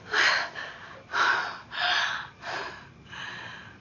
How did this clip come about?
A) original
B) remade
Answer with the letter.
A